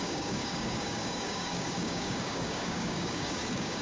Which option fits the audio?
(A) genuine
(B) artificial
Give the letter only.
B